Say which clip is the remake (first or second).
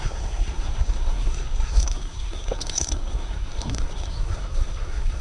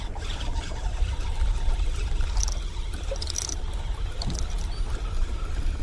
first